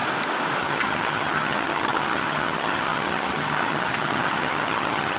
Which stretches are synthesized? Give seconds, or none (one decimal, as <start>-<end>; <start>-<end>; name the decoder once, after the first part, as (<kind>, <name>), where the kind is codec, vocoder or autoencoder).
0.6-5.2 (vocoder, HiFi-GAN)